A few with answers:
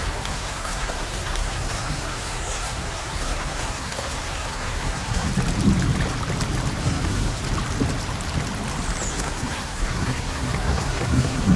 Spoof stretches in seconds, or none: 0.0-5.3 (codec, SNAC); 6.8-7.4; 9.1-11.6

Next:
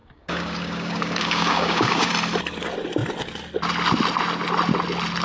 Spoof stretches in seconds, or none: 0.0-2.1 (codec, DAC)

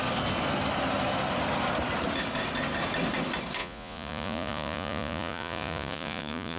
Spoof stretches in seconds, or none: 3.6-6.6 (vocoder, Vocos)

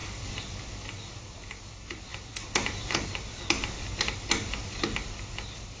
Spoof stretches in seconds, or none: none